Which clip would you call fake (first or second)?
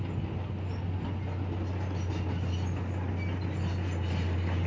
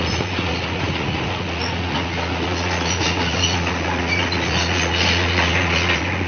second